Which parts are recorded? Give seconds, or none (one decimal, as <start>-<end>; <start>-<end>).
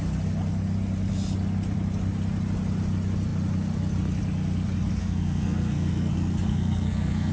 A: 0.0-5.0; 6.1-6.5